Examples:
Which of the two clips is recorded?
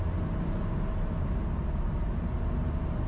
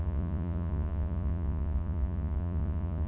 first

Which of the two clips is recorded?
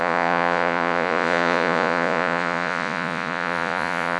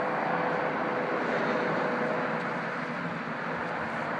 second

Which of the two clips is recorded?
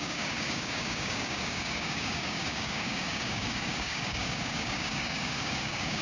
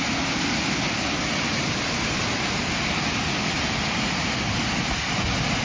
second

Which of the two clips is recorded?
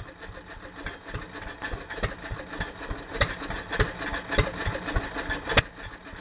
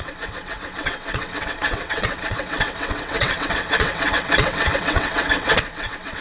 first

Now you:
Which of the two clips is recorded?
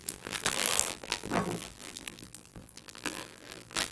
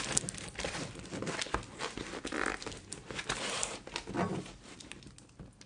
second